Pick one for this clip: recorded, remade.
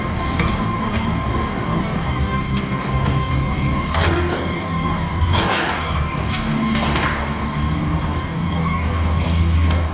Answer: remade